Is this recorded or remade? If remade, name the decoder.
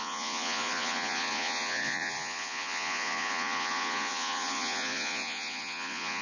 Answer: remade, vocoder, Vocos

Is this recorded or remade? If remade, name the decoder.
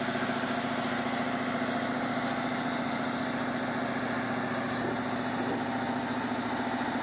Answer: recorded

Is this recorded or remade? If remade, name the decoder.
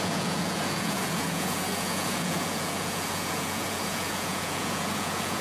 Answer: remade, vocoder, Vocos